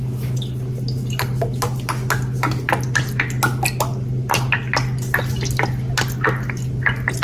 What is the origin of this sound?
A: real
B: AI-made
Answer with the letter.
A